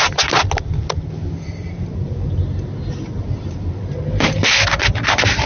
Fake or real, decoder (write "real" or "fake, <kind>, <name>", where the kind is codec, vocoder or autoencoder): real